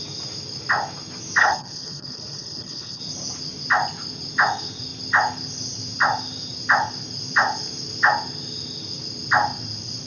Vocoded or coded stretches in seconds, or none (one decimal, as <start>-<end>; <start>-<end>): 1.4-3.0